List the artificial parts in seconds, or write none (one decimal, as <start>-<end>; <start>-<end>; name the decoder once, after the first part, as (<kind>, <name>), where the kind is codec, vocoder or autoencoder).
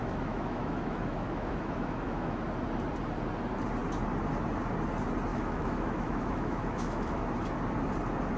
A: 0.0-2.4 (autoencoder, DAC-VAE); 5.3-7.2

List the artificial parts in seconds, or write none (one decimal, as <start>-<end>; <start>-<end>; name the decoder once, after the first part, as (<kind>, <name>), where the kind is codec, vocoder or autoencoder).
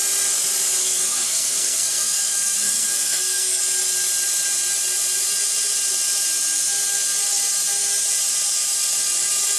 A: 0.8-3.6 (codec, SNAC)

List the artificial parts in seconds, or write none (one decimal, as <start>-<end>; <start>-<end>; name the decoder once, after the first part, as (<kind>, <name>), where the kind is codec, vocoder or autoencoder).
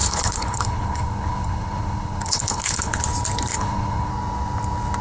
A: 0.0-3.0 (codec, HILCodec); 3.5-4.1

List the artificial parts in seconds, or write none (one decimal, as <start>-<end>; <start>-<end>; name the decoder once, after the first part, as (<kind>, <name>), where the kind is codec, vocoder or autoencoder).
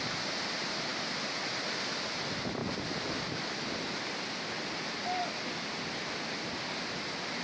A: none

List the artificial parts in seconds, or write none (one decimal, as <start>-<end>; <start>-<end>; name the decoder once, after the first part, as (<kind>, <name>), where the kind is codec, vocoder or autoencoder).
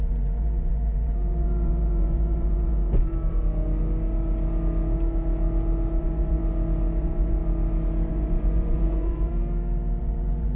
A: 0.0-3.1 (vocoder, Vocos); 6.0-6.4; 7.0-7.4; 8.1-9.3; 10.0-10.6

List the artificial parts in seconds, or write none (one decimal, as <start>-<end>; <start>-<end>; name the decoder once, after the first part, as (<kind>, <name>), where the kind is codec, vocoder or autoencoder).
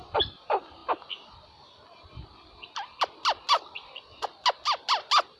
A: none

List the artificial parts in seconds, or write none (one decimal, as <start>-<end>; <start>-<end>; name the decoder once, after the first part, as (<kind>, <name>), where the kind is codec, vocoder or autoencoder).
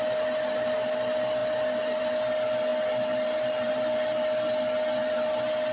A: none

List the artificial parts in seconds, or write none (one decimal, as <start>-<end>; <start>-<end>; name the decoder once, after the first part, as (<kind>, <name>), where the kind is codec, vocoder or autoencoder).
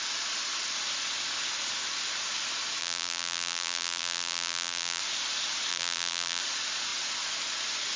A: 2.8-5.0 (vocoder, BigVGAN v2); 5.7-6.4